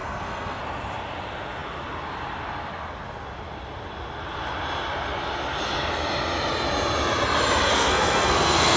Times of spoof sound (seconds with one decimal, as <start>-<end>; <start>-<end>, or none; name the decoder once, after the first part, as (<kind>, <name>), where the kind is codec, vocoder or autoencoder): 0.0-0.6 (codec, SNAC); 7.7-8.8